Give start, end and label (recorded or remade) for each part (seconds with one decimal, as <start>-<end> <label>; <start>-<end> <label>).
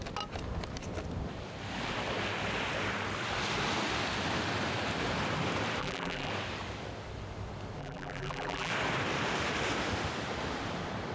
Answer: 0.0-5.8 recorded; 5.8-6.3 remade; 6.3-7.8 recorded; 7.8-8.7 remade; 8.7-11.1 recorded